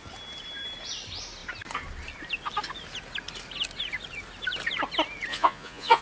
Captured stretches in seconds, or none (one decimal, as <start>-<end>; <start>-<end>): 0.0-5.3